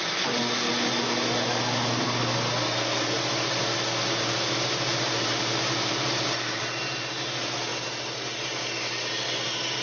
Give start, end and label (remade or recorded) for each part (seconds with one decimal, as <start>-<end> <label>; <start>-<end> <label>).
0.0-0.4 remade; 0.4-4.2 recorded; 4.2-7.7 remade; 7.7-9.3 recorded; 9.3-9.8 remade